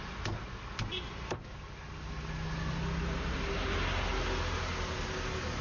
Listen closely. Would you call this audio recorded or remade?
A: recorded